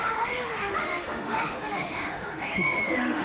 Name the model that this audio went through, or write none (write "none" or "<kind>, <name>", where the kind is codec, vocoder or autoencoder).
autoencoder, DAC-VAE